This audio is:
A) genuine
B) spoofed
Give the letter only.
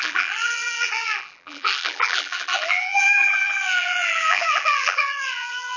B